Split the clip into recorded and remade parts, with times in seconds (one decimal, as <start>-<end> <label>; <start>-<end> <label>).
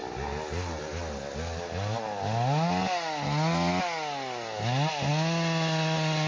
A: 0.0-6.3 recorded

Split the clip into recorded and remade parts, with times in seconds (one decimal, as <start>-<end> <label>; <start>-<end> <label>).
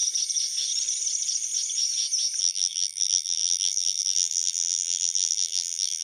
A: 0.0-2.4 recorded; 2.4-6.0 remade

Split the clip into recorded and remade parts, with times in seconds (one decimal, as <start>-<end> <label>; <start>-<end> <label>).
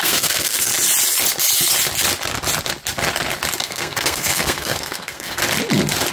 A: 0.0-0.7 remade; 0.7-3.6 recorded; 3.6-5.4 remade; 5.4-6.1 recorded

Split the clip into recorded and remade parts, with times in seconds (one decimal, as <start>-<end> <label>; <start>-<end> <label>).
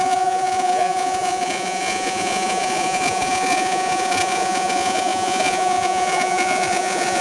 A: 0.0-7.2 remade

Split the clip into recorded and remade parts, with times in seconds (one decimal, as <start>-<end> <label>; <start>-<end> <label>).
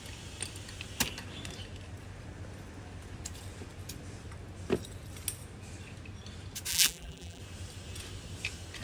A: 0.0-6.7 recorded; 6.7-7.4 remade; 7.4-8.8 recorded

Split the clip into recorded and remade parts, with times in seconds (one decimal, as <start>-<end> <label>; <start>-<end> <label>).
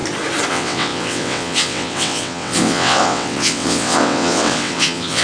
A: 0.0-0.5 recorded; 0.5-5.2 remade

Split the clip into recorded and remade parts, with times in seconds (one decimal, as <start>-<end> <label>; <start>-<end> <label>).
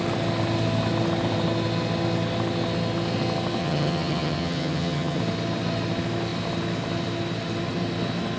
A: 0.0-3.6 recorded; 3.6-5.2 remade; 5.2-8.4 recorded